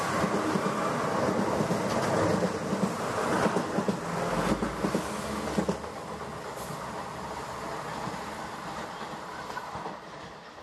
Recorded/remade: recorded